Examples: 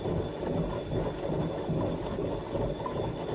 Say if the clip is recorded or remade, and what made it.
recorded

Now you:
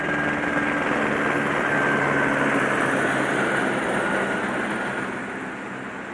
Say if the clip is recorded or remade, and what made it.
recorded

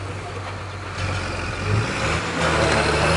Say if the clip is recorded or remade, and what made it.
recorded